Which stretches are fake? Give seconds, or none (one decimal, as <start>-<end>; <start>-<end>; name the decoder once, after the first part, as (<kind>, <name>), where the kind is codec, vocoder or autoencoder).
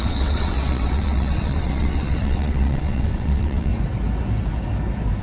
0.0-3.7 (vocoder, WaveNeXt)